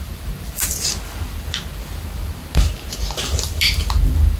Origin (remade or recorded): remade